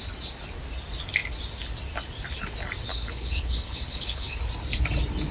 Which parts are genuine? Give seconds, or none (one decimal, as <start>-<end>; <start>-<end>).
0.0-2.9; 4.4-5.3